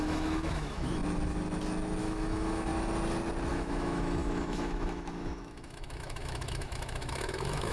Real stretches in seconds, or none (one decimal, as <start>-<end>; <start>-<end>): 1.0-2.0; 2.7-3.5